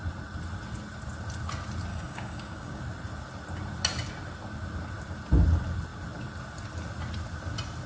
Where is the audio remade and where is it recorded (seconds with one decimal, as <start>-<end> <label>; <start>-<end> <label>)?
0.0-1.9 recorded; 1.9-2.8 remade; 2.8-7.9 recorded